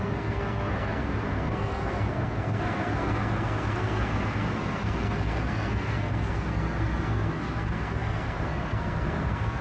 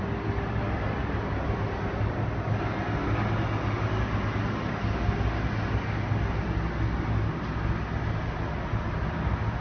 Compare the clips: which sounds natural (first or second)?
second